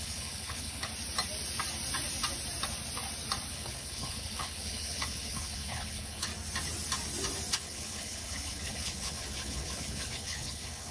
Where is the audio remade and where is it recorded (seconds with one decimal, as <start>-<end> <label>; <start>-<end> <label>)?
0.0-0.9 remade; 0.9-3.5 recorded; 3.5-6.3 remade; 6.3-7.5 recorded; 7.5-10.9 remade